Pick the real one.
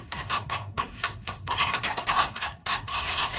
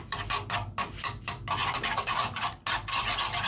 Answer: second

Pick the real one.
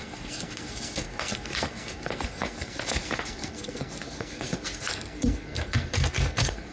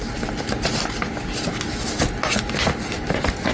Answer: second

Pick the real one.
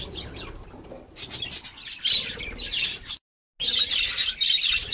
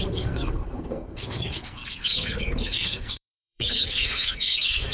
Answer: first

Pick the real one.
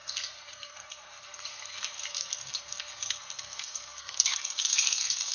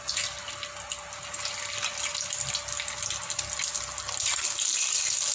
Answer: second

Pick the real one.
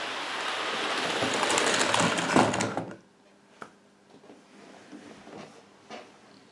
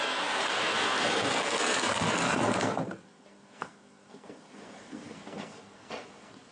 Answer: first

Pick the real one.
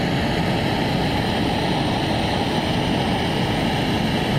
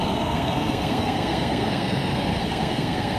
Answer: first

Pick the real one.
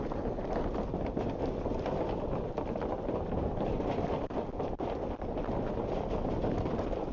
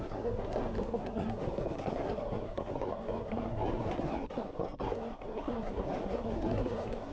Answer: first